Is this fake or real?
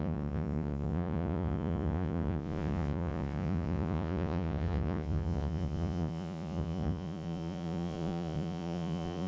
fake